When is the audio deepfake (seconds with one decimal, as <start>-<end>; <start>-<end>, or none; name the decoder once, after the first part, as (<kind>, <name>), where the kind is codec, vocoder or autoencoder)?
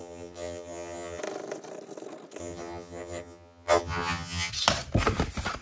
0.0-1.2 (vocoder, HiFi-GAN); 2.4-4.5